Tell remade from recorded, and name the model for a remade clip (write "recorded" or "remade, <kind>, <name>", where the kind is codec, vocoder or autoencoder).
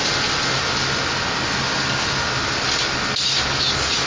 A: recorded